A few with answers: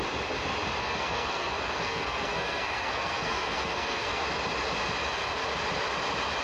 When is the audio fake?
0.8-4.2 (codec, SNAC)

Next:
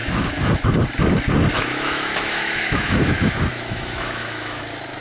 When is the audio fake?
1.6-4.6 (autoencoder, DAC-VAE)